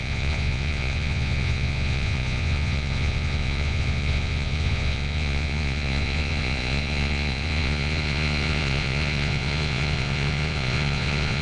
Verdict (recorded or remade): remade